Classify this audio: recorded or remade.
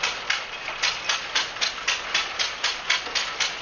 recorded